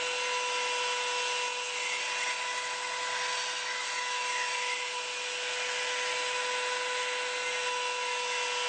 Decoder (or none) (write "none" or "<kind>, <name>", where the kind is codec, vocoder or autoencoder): none